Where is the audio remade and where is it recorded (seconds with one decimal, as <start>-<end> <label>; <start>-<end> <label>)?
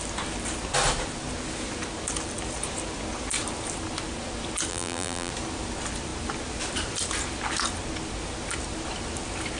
0.0-4.7 recorded; 4.7-5.3 remade; 5.3-9.6 recorded